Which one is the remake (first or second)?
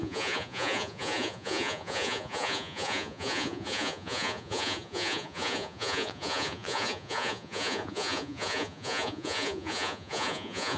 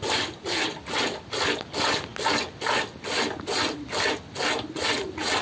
first